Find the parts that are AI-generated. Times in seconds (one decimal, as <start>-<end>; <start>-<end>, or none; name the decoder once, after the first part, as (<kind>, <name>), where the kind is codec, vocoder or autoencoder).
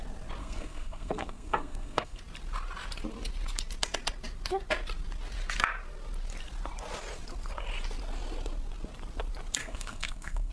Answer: 0.4-2.2 (codec, SNAC); 9.6-10.5